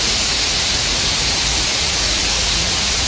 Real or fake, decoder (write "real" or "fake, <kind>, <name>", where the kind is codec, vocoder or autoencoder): fake, vocoder, Vocos